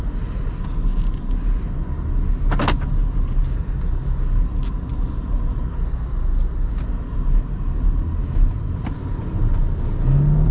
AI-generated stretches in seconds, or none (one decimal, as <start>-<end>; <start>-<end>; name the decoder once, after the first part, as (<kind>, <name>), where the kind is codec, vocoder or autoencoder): 4.9-5.4 (vocoder, BigVGAN v2); 8.2-9.2